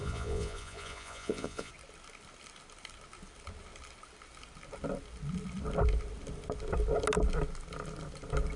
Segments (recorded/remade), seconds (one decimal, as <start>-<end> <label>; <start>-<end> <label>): 0.0-1.7 remade; 1.7-8.6 recorded